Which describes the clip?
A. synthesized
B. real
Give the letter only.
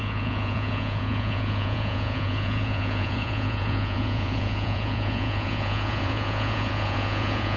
A